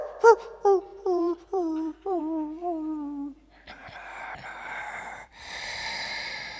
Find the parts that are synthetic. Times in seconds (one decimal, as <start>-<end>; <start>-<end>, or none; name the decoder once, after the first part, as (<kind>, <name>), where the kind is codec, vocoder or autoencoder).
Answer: 0.9-2.2 (vocoder, BigVGAN v2); 3.8-5.3